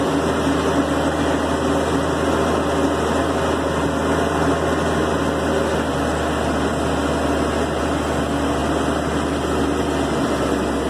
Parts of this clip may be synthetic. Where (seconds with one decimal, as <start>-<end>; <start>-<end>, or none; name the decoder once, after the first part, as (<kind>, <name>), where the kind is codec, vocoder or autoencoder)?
none